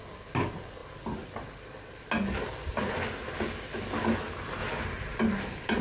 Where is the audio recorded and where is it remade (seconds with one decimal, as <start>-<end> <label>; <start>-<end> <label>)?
0.0-5.8 recorded